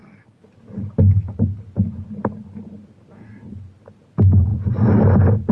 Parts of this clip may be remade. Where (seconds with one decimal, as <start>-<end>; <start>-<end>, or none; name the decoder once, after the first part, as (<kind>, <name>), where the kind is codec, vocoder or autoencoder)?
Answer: none